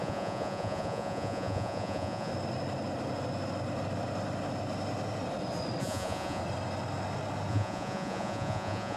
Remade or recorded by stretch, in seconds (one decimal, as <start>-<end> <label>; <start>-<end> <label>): 0.0-2.3 remade; 2.3-5.8 recorded; 5.8-6.4 remade; 6.4-7.5 recorded; 7.5-9.0 remade

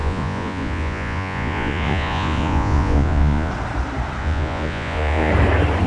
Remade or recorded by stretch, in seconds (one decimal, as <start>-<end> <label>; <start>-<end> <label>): 0.0-3.5 remade; 3.5-4.2 recorded; 4.2-5.3 remade; 5.3-5.9 recorded